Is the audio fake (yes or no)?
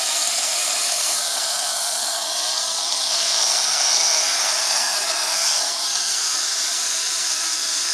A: yes